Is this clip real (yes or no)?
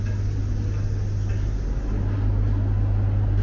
yes